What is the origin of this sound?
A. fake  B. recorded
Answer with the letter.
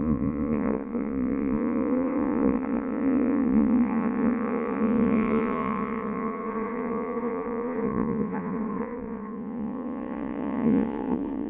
A